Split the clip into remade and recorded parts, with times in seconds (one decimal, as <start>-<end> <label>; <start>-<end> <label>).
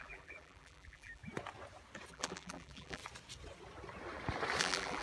0.0-1.2 remade; 1.2-2.1 recorded; 2.1-3.0 remade; 3.0-4.6 recorded; 4.6-5.0 remade